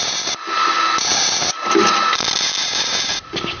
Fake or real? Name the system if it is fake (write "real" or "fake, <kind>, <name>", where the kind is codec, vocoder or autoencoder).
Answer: real